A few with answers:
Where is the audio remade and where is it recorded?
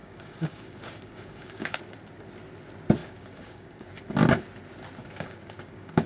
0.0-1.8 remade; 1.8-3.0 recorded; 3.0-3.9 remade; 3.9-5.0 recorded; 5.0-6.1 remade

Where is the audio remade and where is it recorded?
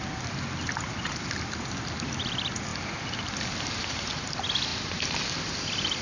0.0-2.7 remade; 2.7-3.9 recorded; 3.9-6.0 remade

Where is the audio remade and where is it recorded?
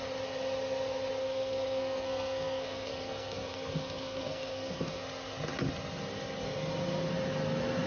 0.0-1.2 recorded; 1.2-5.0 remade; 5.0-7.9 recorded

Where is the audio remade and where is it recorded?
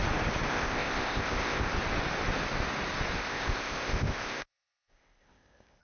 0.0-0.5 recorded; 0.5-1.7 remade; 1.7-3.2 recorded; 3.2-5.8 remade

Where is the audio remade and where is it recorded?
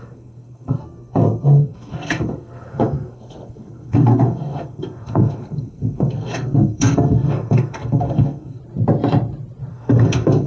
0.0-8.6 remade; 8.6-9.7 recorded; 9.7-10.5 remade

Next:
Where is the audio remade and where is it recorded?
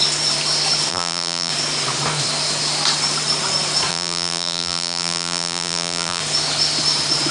0.0-0.9 recorded; 0.9-1.5 remade; 1.5-3.9 recorded; 3.9-6.2 remade; 6.2-7.3 recorded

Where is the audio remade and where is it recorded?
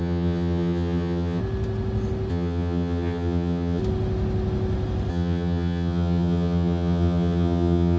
0.0-1.4 remade; 1.4-2.3 recorded; 2.3-3.8 remade; 3.8-5.1 recorded; 5.1-8.0 remade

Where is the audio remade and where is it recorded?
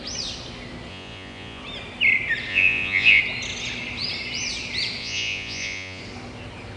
0.0-0.9 recorded; 0.9-1.6 remade; 1.6-2.5 recorded; 2.5-3.2 remade; 3.2-5.0 recorded; 5.0-6.0 remade; 6.0-6.8 recorded